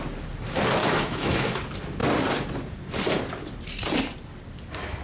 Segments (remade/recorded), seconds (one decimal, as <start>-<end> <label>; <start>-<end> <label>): 0.0-0.8 recorded; 0.8-1.6 remade; 1.6-5.0 recorded